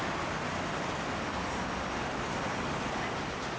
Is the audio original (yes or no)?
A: yes